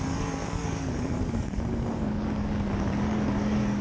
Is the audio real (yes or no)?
no